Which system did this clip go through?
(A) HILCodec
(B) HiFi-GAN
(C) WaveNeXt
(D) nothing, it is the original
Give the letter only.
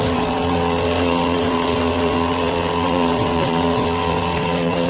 C